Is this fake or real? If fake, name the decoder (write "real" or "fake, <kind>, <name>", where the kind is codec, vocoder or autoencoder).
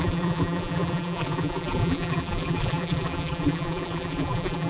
fake, vocoder, BigVGAN v2